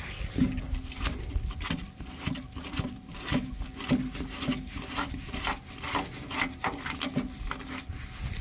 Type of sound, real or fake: real